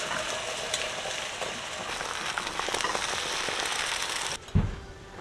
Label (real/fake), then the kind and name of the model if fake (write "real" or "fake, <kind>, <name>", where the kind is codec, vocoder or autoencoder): real